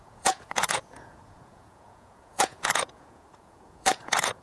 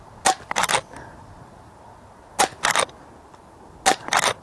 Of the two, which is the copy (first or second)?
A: first